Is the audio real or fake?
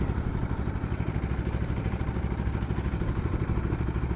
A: real